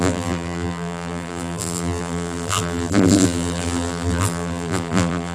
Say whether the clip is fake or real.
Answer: fake